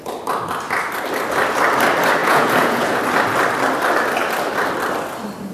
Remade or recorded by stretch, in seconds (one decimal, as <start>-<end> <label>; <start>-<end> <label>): 0.0-2.2 recorded; 2.2-3.0 remade; 3.0-5.5 recorded

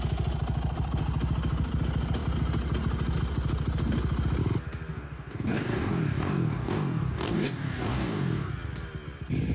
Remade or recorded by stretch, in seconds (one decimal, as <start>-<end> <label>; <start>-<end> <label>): 0.0-4.9 recorded; 4.9-8.5 remade; 8.5-9.5 recorded

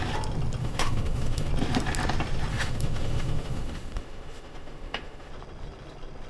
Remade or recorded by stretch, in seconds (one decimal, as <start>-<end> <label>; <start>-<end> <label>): 0.0-0.6 recorded; 0.6-1.5 remade; 1.5-2.5 recorded; 2.5-5.3 remade; 5.3-6.3 recorded

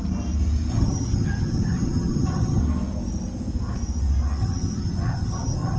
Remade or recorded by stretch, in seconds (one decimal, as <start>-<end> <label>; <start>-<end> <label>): 0.0-0.7 recorded; 0.7-2.6 remade; 2.6-4.4 recorded; 4.4-5.8 remade

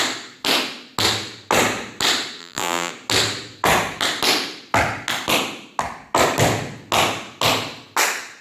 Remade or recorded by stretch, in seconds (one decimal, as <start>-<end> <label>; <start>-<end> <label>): 0.0-2.4 recorded; 2.4-2.9 remade; 2.9-8.4 recorded

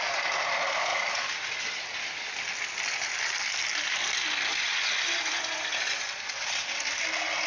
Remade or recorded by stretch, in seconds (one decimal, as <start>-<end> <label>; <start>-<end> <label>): 0.0-4.5 recorded; 4.5-6.0 remade; 6.0-7.5 recorded